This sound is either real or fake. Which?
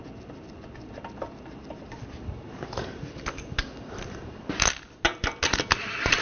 real